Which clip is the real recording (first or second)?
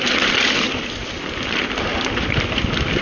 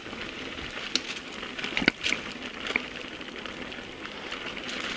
second